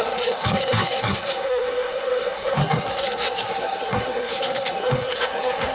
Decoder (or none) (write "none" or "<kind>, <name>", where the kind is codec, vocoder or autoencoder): codec, SNAC